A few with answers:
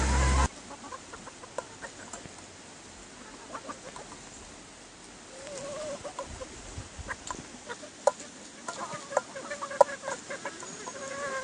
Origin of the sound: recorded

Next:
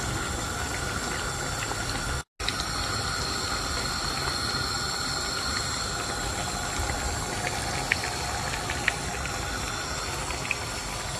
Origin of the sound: recorded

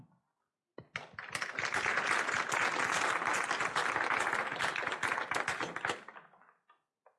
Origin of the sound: recorded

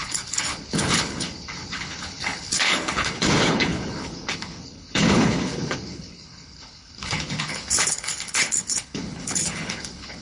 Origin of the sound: remade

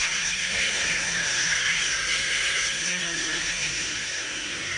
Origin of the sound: remade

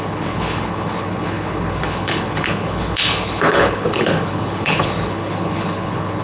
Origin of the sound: remade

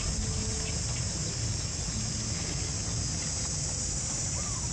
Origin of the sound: recorded